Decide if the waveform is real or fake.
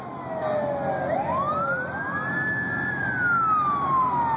real